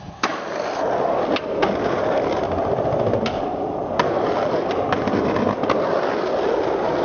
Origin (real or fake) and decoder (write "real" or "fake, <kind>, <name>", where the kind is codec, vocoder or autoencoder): real